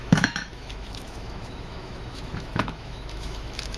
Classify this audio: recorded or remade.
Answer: remade